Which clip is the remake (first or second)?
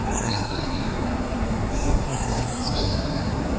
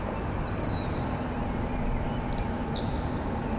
first